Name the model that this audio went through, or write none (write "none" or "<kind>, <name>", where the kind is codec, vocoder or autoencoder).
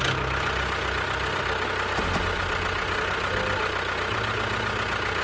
none